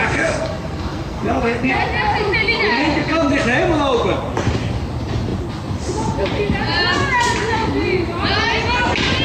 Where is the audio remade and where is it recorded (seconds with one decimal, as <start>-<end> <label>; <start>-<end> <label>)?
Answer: 0.0-1.7 remade; 1.7-2.7 recorded; 2.7-3.3 remade; 3.3-9.2 recorded